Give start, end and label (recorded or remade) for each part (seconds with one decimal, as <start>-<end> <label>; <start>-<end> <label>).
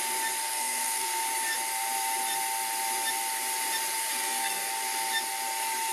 0.0-0.4 recorded; 0.4-1.2 remade; 1.2-4.1 recorded; 4.1-4.7 remade; 4.7-5.9 recorded